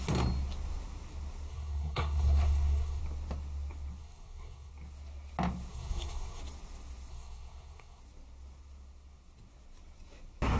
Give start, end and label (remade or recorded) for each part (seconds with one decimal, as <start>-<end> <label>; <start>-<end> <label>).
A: 0.0-1.5 recorded; 1.5-3.0 remade; 3.0-4.0 recorded; 4.0-4.7 remade; 4.7-5.7 recorded; 5.7-6.4 remade; 6.4-7.1 recorded; 7.1-8.0 remade; 8.0-10.6 recorded